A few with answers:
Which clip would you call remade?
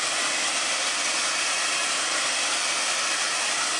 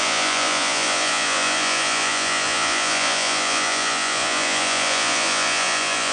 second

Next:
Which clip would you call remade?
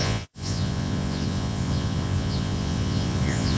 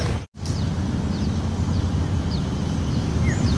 first